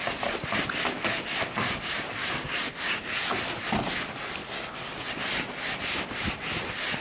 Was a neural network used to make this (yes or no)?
no